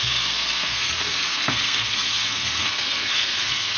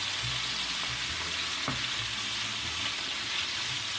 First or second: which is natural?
second